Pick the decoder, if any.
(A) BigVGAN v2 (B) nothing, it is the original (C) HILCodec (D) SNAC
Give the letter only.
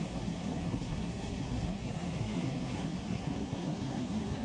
D